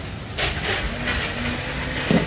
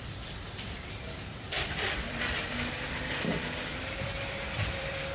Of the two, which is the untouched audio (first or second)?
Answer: first